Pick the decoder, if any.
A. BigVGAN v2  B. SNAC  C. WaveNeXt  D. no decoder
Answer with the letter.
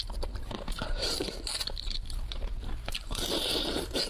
A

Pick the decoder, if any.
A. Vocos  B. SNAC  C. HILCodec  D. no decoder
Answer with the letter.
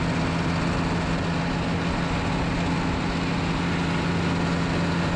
D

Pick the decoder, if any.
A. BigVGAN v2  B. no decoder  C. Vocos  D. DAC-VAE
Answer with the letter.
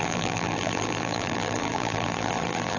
A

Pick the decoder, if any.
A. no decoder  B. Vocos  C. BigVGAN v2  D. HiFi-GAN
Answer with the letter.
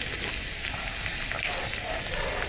A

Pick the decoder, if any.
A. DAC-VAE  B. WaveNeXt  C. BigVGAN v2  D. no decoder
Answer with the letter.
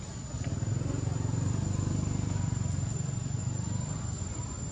D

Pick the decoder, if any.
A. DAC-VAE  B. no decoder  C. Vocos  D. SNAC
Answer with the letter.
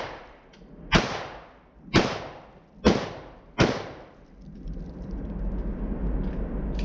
B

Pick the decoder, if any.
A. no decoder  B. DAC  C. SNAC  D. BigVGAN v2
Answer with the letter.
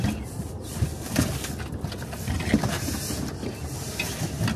A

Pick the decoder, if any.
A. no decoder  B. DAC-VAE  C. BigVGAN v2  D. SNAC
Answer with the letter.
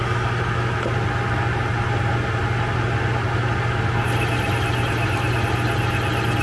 A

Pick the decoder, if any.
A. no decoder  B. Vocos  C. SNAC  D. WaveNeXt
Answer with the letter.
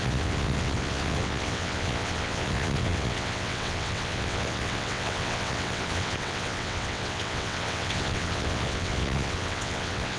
D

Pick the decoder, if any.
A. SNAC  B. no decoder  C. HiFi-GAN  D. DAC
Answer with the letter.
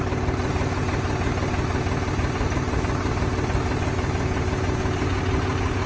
B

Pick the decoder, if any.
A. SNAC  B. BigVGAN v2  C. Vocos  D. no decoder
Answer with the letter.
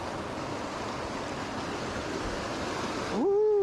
D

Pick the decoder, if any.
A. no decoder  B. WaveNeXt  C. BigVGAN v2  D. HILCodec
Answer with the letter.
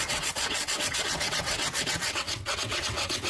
B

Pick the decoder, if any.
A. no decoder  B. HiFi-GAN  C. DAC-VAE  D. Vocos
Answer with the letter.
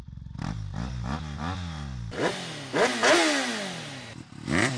A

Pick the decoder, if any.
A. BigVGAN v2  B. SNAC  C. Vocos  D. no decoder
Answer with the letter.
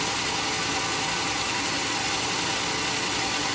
D